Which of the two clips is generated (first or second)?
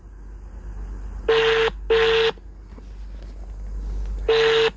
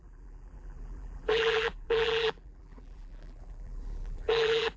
second